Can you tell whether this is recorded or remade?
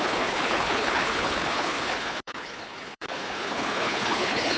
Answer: remade